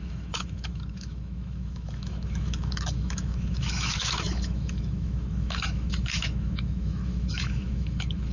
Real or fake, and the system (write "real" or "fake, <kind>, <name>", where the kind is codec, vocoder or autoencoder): fake, autoencoder, DAC-VAE